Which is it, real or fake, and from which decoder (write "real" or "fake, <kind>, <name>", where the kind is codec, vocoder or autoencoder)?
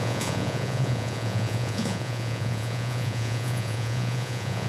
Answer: fake, vocoder, Vocos